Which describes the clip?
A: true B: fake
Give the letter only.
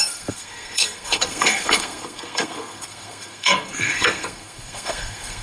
B